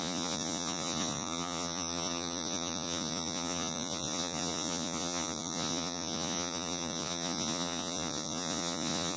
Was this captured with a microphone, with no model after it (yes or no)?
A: no